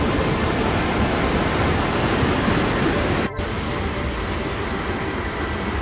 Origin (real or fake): real